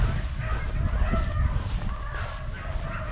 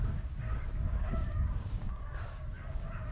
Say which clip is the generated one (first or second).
second